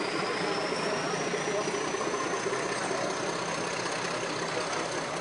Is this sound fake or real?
real